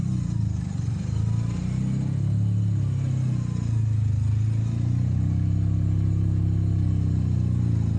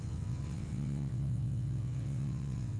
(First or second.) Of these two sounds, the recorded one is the first